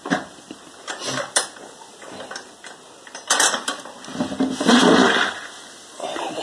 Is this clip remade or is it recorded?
recorded